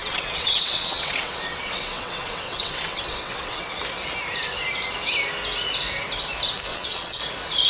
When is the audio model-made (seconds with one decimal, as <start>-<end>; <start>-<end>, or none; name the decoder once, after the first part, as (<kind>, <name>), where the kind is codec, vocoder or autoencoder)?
0.0-3.8 (vocoder, WaveNeXt); 6.7-7.2